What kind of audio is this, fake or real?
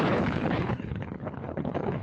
fake